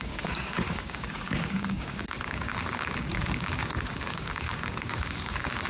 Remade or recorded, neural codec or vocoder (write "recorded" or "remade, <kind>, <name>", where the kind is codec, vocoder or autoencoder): remade, codec, DAC